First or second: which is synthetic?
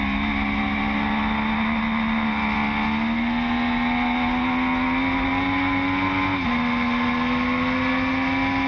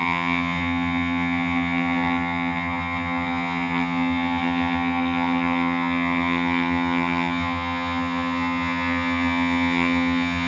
second